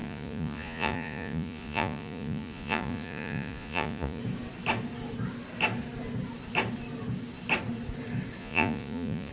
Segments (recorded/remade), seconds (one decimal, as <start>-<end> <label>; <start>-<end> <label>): 0.0-4.2 remade; 4.2-8.4 recorded; 8.4-9.3 remade